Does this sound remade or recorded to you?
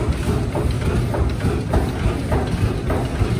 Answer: recorded